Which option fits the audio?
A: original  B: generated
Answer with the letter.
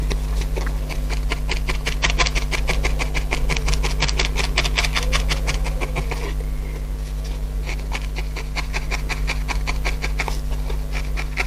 A